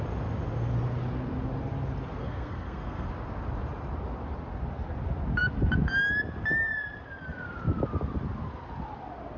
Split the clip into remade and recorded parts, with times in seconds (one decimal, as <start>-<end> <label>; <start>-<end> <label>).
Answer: 0.0-2.2 recorded; 2.2-3.1 remade; 3.1-9.4 recorded